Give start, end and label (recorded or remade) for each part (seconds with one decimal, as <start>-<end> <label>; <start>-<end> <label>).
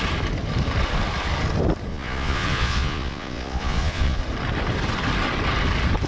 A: 0.0-1.9 recorded; 1.9-4.2 remade; 4.2-6.1 recorded